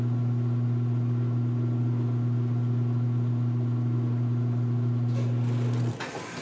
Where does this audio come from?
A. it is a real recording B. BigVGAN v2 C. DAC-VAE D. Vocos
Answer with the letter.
A